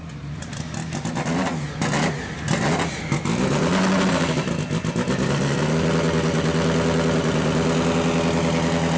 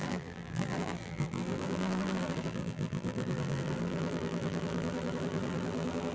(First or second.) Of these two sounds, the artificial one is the second